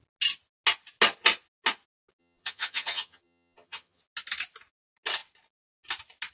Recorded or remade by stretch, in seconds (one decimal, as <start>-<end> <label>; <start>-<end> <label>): 0.0-2.2 recorded; 2.2-4.0 remade; 4.0-6.3 recorded